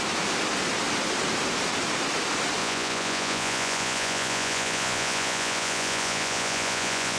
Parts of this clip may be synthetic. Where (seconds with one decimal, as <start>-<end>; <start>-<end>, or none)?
2.6-7.2